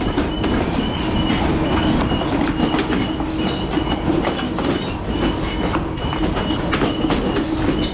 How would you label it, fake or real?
real